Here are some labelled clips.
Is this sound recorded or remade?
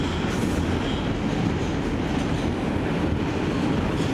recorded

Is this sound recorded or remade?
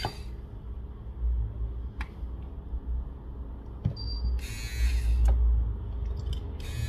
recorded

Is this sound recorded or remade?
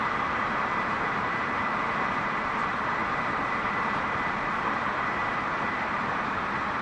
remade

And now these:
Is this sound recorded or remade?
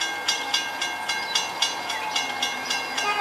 recorded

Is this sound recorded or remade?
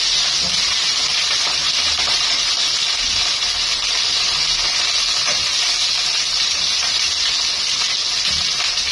recorded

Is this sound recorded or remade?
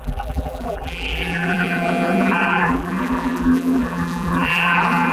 remade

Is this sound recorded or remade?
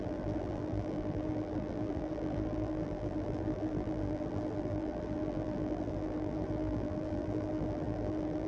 remade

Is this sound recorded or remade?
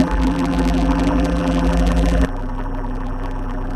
remade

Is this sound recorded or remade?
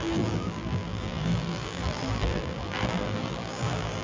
remade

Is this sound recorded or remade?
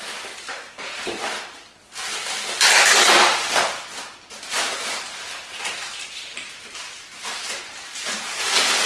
remade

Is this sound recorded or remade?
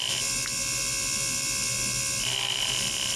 remade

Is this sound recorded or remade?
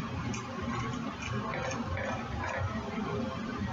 recorded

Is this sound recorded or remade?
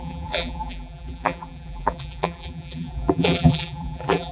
remade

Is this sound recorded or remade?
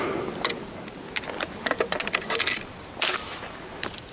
recorded